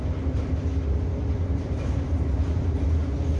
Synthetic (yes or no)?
no